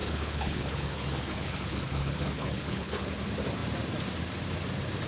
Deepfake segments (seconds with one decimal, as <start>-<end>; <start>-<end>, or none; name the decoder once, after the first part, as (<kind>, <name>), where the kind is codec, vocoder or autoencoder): 0.0-3.1 (codec, HILCodec)